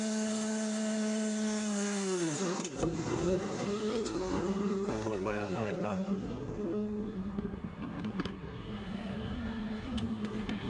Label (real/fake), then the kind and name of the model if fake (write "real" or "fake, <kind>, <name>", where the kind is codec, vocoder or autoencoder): fake, codec, SNAC